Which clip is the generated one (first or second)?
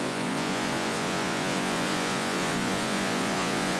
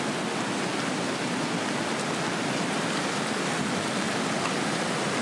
first